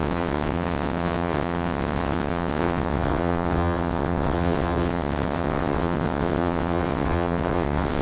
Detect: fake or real fake